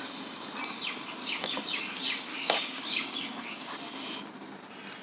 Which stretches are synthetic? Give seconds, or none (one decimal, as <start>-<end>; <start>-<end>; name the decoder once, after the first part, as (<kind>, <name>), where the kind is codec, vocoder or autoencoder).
1.2-1.8 (codec, DAC); 2.3-3.7